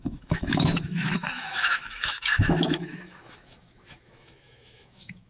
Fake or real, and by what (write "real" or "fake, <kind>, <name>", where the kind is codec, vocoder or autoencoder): fake, autoencoder, DAC-VAE